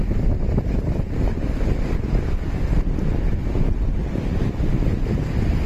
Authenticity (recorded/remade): recorded